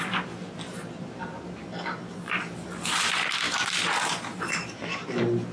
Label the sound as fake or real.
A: fake